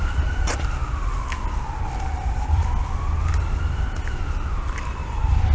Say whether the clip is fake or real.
real